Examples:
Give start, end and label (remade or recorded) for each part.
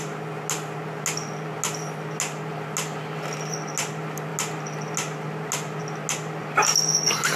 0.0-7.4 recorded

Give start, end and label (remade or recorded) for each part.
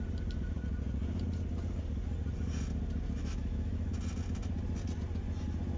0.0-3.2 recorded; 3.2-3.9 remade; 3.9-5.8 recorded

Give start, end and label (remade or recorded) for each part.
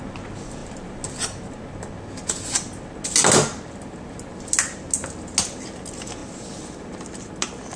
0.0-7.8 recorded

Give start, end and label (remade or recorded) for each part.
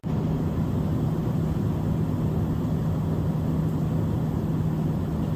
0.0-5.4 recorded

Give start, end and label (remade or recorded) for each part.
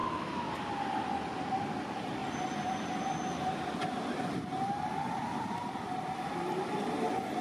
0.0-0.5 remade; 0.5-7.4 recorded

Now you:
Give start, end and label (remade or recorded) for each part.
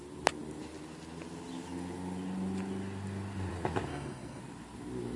0.0-3.9 recorded; 3.9-4.4 remade; 4.4-5.2 recorded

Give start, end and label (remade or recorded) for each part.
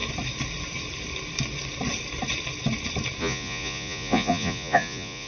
0.0-3.2 recorded; 3.2-5.3 remade